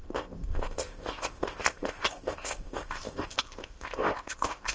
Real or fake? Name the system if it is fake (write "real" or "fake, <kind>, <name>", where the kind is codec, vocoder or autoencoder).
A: fake, codec, ZipCodec